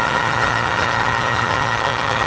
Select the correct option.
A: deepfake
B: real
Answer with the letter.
A